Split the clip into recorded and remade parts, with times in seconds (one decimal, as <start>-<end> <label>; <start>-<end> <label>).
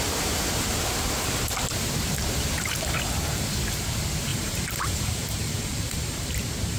0.0-4.3 recorded; 4.3-6.8 remade